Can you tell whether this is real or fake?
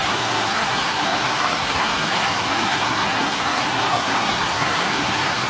fake